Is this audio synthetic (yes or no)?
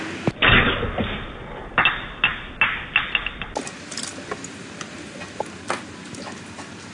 no